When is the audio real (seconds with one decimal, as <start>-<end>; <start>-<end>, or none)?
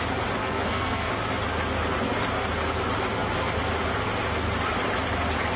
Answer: 0.0-0.4; 1.1-5.6